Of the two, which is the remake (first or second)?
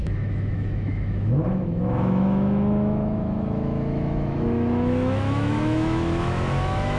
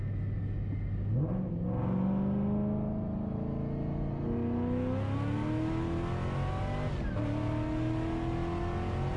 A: first